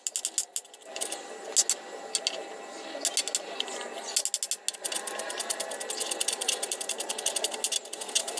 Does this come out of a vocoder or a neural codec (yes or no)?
no